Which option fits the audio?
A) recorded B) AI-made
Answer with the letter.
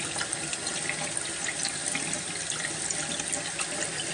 A